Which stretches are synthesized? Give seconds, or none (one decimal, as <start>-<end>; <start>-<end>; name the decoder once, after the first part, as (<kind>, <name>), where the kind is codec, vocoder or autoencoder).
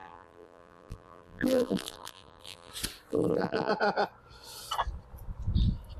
0.0-2.7 (vocoder, BigVGAN v2); 3.1-3.7